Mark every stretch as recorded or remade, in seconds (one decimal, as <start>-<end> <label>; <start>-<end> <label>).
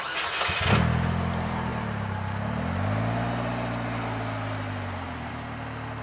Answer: 0.0-6.0 recorded